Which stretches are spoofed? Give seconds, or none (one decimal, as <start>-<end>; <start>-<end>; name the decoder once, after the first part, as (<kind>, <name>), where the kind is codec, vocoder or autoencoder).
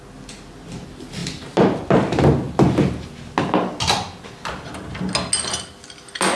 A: none